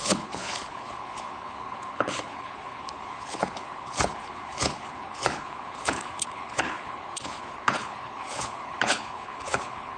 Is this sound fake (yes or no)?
yes